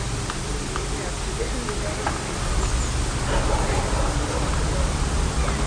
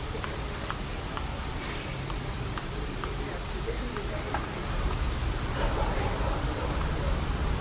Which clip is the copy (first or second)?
second